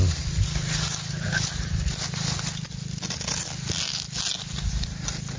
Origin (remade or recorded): recorded